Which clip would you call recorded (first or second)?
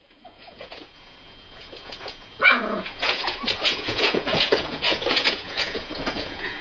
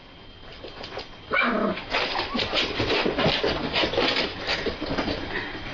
second